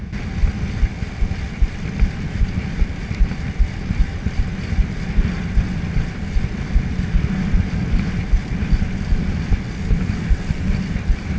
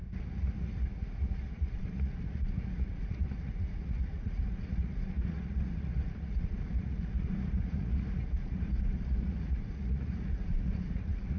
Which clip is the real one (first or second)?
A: first